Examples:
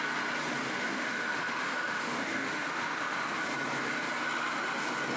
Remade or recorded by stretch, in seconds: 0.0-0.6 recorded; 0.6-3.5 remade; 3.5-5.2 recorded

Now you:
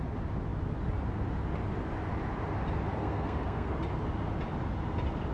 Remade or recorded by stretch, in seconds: 0.0-3.0 recorded; 3.0-3.7 remade; 3.7-5.3 recorded

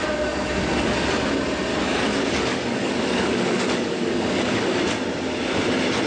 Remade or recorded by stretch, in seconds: 0.0-1.7 recorded; 1.7-4.8 remade; 4.8-6.1 recorded

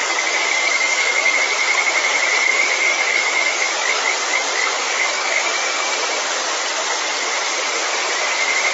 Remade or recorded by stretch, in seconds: 0.0-1.4 remade; 1.4-2.5 recorded; 2.5-4.0 remade; 4.0-4.6 recorded; 4.6-5.8 remade; 5.8-8.7 recorded

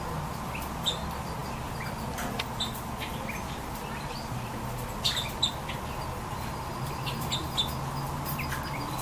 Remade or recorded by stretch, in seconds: 0.0-9.0 recorded